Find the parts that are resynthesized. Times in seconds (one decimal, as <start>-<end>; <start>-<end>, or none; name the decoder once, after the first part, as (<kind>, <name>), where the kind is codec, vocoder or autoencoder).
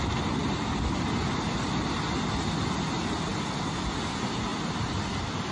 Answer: none